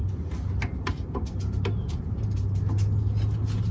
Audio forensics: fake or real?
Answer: real